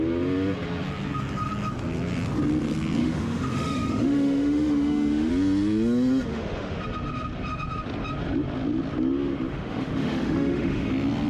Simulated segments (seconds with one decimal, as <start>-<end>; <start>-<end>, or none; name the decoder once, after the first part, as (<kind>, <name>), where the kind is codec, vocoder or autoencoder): 3.0-5.3 (autoencoder, DAC-VAE); 6.3-6.8; 9.5-10.9